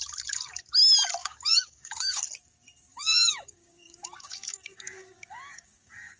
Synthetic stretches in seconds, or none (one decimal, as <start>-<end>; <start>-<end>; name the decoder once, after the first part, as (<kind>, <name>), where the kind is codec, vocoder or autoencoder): 1.2-2.2 (codec, DAC); 2.9-6.2